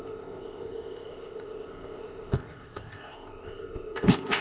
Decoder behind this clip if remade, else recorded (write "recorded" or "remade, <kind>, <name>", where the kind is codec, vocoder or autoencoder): remade, codec, ZipCodec